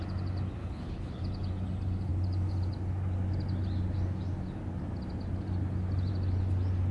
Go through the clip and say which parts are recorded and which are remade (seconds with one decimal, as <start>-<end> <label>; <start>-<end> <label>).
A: 0.0-0.6 recorded; 0.6-1.2 remade; 1.2-6.9 recorded